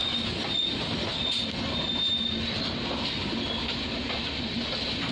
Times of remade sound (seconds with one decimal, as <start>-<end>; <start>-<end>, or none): none